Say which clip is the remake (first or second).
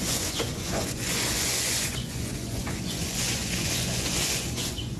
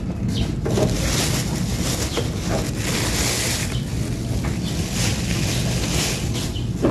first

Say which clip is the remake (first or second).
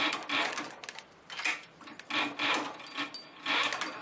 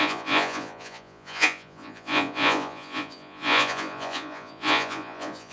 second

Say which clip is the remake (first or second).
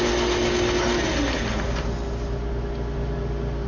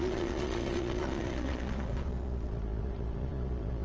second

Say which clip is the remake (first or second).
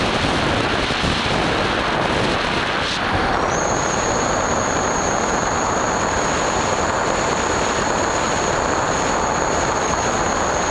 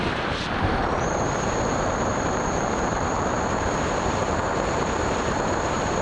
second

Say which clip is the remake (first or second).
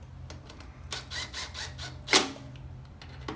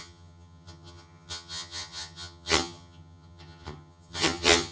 second